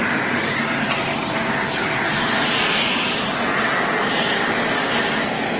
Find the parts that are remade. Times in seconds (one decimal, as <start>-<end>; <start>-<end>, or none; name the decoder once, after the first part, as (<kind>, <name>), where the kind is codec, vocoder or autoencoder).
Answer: none